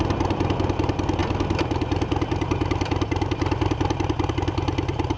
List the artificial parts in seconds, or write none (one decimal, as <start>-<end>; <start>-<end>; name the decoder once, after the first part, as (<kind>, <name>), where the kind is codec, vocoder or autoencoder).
none